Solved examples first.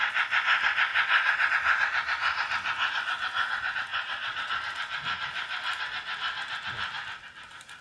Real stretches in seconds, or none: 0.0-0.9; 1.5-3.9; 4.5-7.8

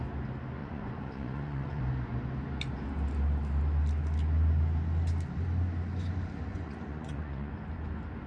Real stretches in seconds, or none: 0.0-0.6; 1.8-6.5; 7.5-8.3

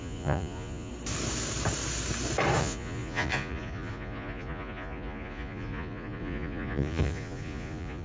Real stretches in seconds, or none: 0.9-2.6

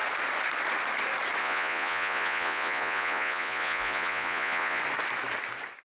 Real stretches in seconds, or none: 0.0-1.4; 4.8-5.9

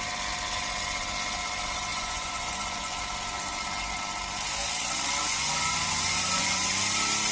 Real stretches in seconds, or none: 0.0-1.9; 3.0-5.2; 6.7-7.3